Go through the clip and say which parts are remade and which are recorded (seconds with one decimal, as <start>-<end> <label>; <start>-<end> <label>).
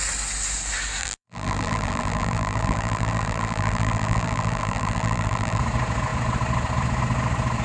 0.0-1.0 recorded; 1.0-5.6 remade; 5.6-7.6 recorded